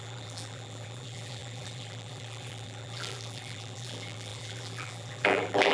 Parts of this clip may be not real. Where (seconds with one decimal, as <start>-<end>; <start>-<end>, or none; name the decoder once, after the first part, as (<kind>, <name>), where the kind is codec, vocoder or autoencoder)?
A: 0.0-5.7 (vocoder, BigVGAN v2)